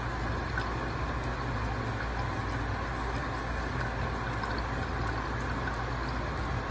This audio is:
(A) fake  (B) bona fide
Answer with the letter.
B